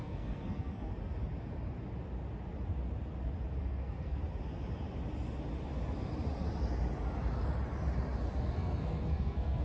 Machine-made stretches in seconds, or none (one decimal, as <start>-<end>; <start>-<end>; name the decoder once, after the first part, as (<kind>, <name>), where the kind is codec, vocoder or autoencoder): 0.0-0.9 (codec, SNAC); 3.6-4.2; 8.4-9.6